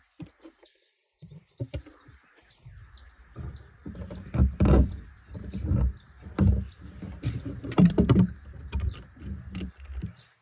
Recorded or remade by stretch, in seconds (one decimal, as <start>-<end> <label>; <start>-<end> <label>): 0.0-10.4 recorded